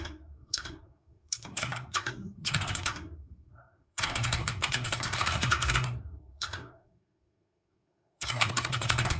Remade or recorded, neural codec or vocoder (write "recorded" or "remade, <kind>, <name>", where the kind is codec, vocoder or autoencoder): remade, codec, SNAC